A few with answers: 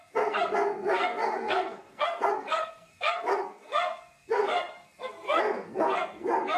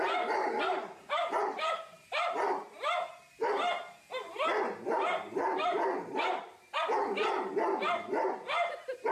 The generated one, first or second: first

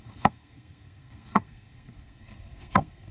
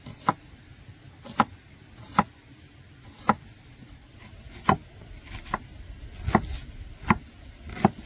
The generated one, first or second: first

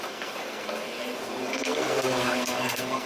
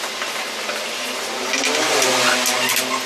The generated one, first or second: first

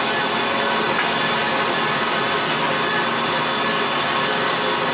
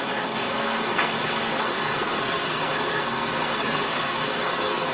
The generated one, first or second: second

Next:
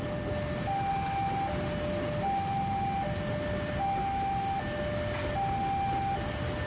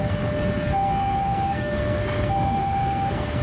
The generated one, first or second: second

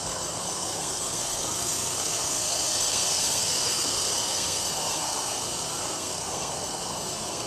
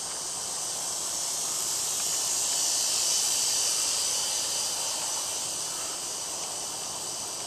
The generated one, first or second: first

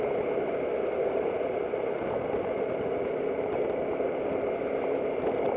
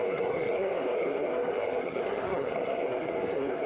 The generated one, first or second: second